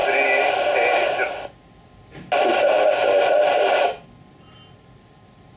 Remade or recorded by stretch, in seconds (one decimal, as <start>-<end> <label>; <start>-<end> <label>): 0.0-5.6 recorded